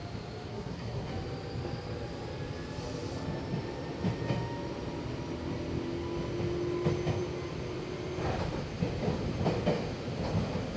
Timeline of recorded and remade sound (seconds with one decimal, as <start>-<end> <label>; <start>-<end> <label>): 0.0-0.5 recorded; 0.5-1.1 remade; 1.1-10.8 recorded